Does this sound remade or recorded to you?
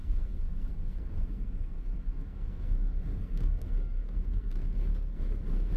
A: remade